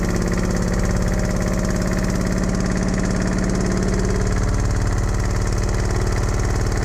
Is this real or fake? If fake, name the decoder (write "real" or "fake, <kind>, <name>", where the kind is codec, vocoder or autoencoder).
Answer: real